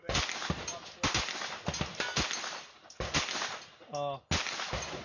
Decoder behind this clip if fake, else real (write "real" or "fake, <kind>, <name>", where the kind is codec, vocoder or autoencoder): real